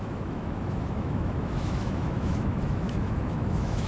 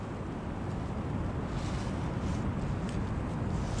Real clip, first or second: second